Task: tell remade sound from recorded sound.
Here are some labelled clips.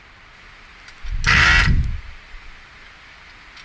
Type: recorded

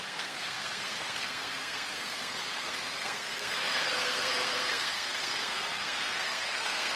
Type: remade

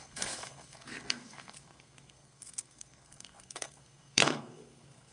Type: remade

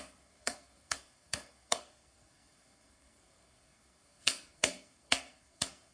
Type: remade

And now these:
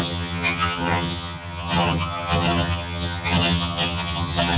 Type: remade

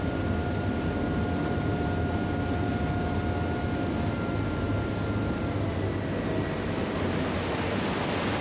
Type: recorded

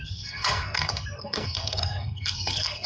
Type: remade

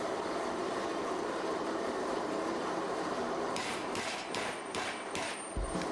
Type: remade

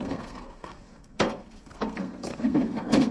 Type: remade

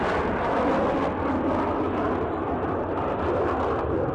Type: recorded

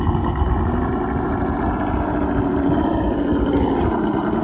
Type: recorded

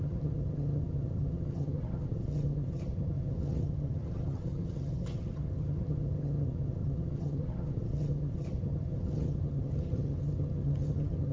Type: remade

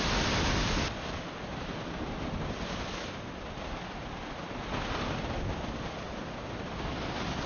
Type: recorded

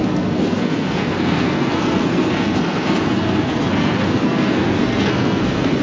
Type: remade